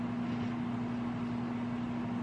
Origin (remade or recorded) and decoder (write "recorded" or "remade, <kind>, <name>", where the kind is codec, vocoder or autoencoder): recorded